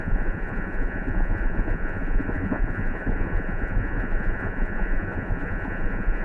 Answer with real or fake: fake